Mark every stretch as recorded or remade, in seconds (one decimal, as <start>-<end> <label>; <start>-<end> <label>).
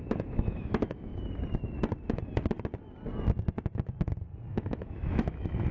0.0-1.1 remade; 1.1-4.5 recorded; 4.5-5.7 remade